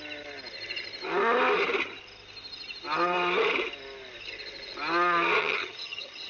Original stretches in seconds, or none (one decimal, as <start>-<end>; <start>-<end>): 0.0-5.4